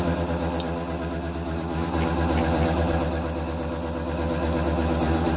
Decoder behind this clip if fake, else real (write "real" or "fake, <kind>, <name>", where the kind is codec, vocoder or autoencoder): real